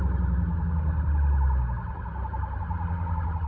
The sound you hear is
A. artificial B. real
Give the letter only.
B